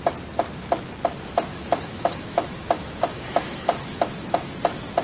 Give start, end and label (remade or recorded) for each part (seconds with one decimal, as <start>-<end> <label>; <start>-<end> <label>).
0.0-1.5 recorded; 1.5-4.5 remade; 4.5-5.0 recorded